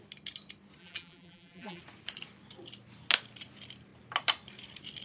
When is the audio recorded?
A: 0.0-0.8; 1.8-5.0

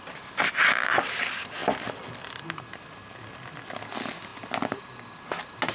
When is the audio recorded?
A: 0.0-5.7

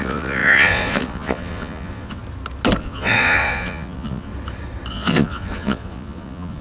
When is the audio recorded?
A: 2.2-2.8; 4.3-4.9

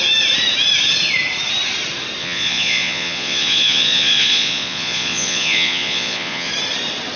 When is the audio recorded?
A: 0.0-2.2; 6.5-7.2

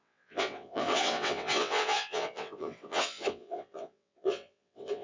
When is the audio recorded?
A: none